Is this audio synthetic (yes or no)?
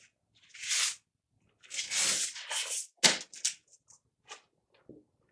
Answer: no